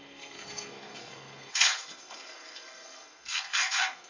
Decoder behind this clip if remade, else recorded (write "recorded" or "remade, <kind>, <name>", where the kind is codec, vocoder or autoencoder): remade, codec, SNAC